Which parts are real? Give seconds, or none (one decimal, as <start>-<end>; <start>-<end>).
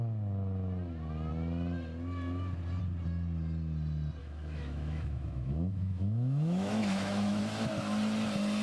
0.0-4.2; 7.4-8.6